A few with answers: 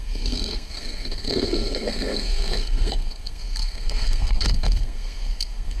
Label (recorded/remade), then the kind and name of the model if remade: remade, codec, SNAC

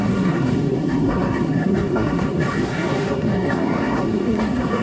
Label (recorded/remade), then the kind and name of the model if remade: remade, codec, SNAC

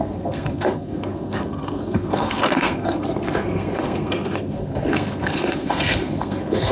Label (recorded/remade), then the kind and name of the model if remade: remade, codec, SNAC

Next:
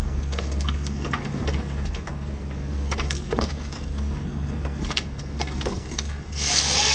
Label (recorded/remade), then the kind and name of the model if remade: remade, codec, SNAC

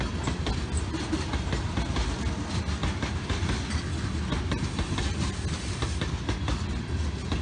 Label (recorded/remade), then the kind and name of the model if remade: recorded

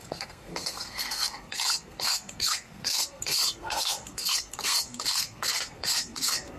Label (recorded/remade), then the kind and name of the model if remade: remade, codec, SNAC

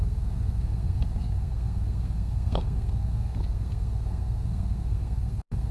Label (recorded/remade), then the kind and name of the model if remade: remade, codec, SNAC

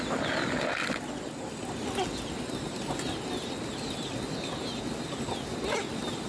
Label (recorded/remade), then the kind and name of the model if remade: recorded